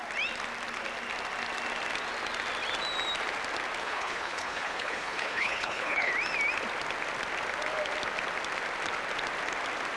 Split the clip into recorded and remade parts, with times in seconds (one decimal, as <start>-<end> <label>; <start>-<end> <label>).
0.0-3.8 recorded; 3.8-6.1 remade; 6.1-10.0 recorded

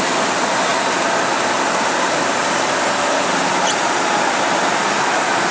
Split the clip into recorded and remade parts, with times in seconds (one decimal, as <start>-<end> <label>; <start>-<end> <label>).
0.0-5.5 recorded